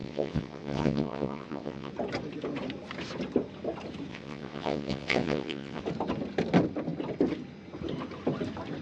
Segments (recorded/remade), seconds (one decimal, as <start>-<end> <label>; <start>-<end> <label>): 0.0-1.9 remade; 1.9-4.1 recorded; 4.1-5.8 remade; 5.8-8.8 recorded